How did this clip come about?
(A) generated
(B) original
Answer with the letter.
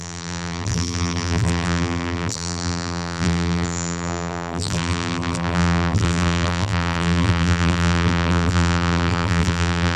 A